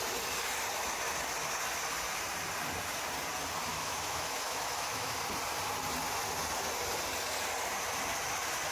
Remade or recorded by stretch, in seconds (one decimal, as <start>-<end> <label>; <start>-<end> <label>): 0.0-3.7 recorded; 3.7-5.2 remade; 5.2-8.7 recorded